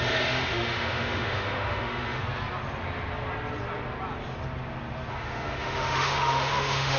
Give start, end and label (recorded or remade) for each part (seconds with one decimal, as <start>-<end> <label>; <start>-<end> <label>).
0.0-2.2 remade; 2.2-5.1 recorded; 5.1-7.0 remade